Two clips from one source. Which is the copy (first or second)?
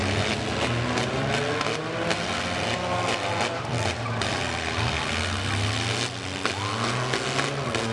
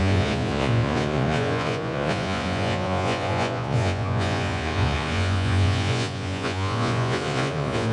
second